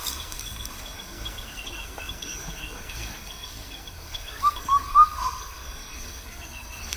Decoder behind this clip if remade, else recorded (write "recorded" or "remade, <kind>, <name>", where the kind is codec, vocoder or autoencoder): remade, codec, SNAC